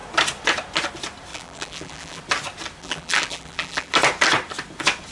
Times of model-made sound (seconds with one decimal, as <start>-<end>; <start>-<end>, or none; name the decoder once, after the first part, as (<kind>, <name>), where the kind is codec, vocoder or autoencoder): 1.3-2.2 (vocoder, BigVGAN v2); 2.8-3.9